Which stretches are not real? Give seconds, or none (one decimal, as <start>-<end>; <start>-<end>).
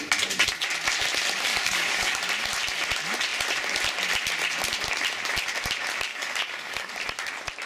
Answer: 1.5-2.2; 6.1-6.9